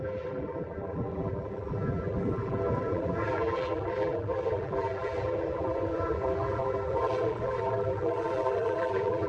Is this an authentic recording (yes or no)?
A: no